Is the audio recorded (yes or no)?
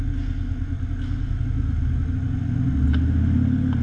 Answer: yes